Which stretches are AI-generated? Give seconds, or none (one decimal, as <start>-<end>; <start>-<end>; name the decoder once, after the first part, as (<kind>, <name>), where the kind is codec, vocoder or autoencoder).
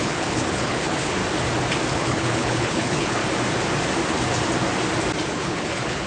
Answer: 0.0-1.2 (codec, HILCodec); 1.9-3.2; 5.3-6.1